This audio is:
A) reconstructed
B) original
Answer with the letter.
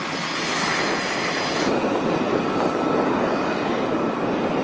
B